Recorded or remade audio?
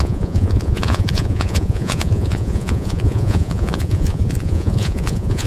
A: remade